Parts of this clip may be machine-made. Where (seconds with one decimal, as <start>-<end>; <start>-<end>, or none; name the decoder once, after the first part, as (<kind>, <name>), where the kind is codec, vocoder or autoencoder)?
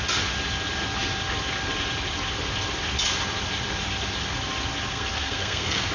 4.9-5.9 (codec, SNAC)